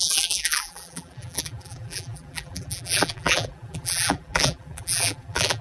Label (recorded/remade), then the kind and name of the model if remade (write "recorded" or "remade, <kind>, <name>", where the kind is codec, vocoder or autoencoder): remade, vocoder, BigVGAN v2